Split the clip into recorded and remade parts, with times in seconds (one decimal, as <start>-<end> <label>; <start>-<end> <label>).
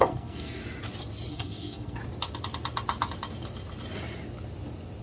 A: 0.0-0.6 remade; 0.6-1.3 recorded; 1.3-2.0 remade; 2.0-5.0 recorded